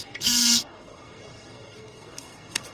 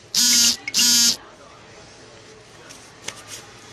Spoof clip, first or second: first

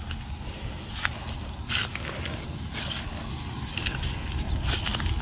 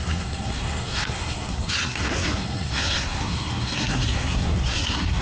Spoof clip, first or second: second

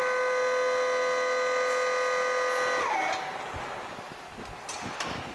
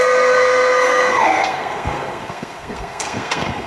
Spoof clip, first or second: second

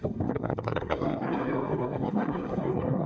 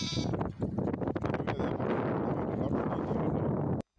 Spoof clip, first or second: first